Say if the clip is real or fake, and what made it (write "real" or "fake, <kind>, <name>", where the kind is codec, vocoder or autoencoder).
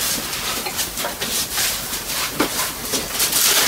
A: real